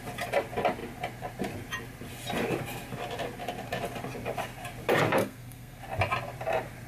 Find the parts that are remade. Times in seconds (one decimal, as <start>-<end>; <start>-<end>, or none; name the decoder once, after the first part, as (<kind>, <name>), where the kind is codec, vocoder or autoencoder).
5.2-5.8 (codec, SNAC)